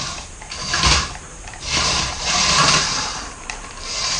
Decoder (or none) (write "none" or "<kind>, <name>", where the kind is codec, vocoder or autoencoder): vocoder, BigVGAN v2